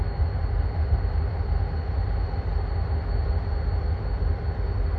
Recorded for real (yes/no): yes